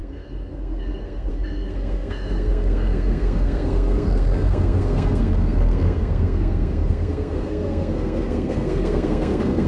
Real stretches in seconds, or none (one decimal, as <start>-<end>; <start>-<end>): none